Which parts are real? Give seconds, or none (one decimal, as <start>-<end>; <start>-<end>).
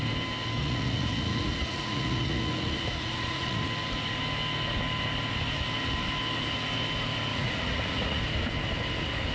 0.0-0.6; 3.6-7.3; 8.2-9.3